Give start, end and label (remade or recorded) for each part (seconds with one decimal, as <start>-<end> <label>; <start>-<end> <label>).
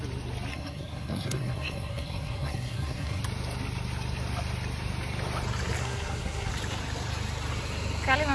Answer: 0.0-0.5 recorded; 0.5-3.2 remade; 3.2-5.8 recorded; 5.8-6.5 remade; 6.5-8.3 recorded